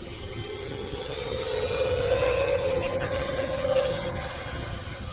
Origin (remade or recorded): remade